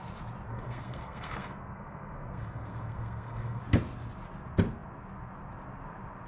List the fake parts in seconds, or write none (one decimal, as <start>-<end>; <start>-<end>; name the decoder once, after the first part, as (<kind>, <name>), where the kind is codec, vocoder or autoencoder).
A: 0.5-3.6 (codec, SNAC)